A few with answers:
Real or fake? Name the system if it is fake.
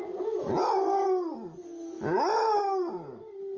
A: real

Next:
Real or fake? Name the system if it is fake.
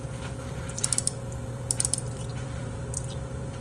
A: fake, vocoder, BigVGAN v2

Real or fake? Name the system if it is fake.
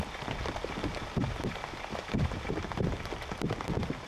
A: real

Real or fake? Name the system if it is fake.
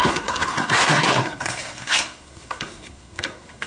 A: fake, codec, SNAC